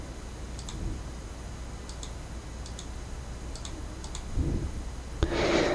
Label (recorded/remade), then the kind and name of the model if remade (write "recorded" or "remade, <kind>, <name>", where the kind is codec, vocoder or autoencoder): recorded